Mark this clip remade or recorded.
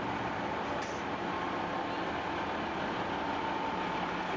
recorded